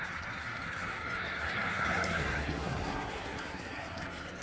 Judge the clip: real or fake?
fake